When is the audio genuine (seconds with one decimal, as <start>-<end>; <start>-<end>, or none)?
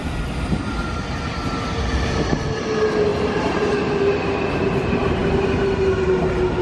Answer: 0.0-6.6